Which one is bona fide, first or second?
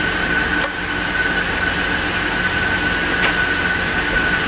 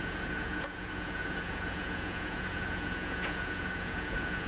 first